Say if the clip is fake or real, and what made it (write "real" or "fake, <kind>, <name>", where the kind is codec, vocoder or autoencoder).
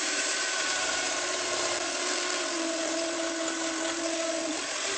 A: fake, vocoder, BigVGAN v2